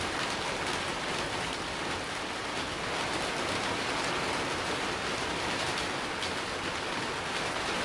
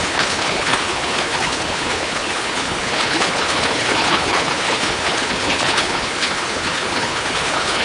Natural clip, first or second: first